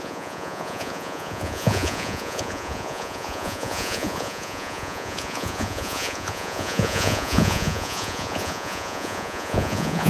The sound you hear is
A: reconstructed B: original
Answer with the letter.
A